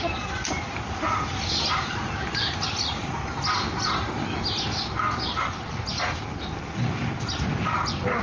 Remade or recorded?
recorded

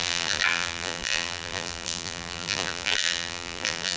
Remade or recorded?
remade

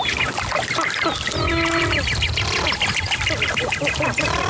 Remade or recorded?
recorded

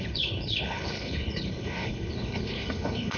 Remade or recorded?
remade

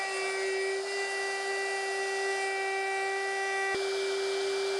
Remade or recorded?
recorded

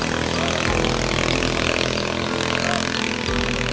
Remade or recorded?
recorded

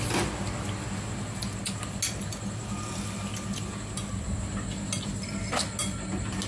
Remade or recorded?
recorded